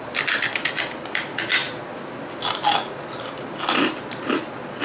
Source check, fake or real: real